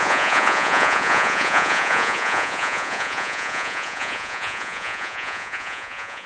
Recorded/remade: remade